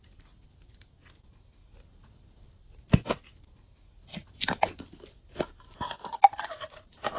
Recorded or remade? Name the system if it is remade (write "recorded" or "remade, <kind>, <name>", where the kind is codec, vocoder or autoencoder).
recorded